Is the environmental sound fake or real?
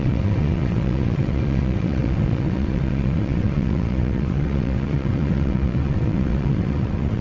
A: fake